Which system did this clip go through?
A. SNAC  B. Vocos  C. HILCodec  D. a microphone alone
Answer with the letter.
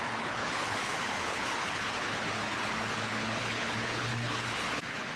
C